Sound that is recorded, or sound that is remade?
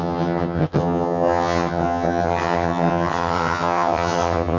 remade